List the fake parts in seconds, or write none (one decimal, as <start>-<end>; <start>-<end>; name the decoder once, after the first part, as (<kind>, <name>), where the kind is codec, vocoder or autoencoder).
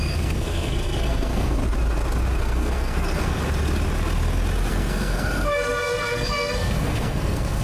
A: 0.0-1.6 (codec, SNAC); 2.4-3.4; 4.7-7.6